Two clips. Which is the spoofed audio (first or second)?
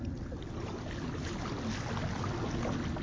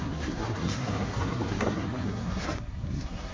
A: second